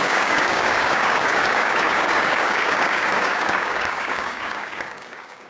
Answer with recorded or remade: remade